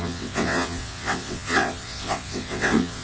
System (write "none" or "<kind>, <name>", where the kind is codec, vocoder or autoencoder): vocoder, WaveNeXt